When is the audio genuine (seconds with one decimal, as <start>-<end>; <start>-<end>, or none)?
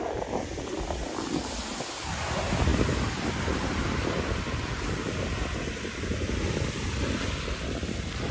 0.0-8.3